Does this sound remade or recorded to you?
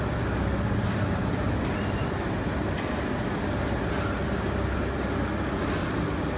recorded